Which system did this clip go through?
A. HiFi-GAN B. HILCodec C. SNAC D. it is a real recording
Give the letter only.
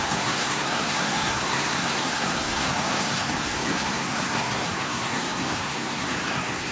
C